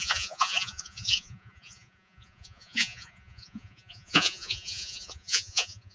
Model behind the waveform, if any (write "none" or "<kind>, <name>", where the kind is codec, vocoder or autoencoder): vocoder, Vocos